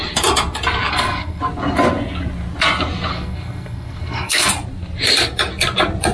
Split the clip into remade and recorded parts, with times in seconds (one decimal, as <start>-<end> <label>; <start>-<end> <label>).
0.0-0.8 recorded; 0.8-1.4 remade; 1.4-3.1 recorded; 3.1-4.5 remade; 4.5-6.1 recorded